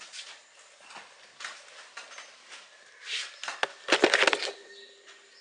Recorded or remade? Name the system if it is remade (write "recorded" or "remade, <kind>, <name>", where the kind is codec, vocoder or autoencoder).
recorded